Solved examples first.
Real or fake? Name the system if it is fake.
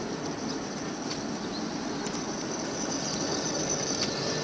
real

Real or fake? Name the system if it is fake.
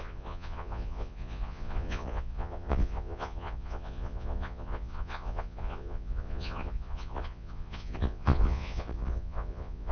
fake, vocoder, Vocos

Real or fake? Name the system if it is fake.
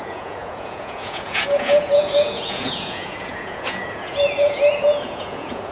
fake, vocoder, Vocos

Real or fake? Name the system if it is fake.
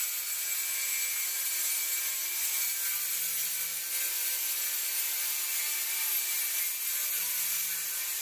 real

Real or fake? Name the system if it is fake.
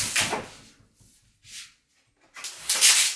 real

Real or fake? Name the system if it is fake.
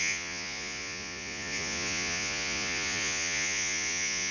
fake, vocoder, Vocos